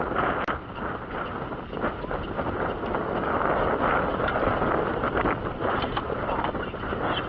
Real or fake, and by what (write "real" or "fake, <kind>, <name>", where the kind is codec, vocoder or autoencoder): real